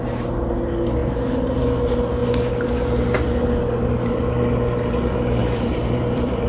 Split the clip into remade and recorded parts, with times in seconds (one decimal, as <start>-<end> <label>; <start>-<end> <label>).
0.0-5.4 recorded; 5.4-6.5 remade